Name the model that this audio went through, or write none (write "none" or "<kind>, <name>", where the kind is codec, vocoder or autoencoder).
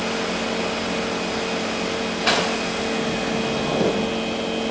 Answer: none